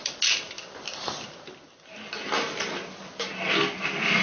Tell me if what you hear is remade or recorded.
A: recorded